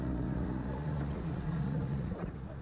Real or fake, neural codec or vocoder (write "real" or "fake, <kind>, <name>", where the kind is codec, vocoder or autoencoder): fake, vocoder, Vocos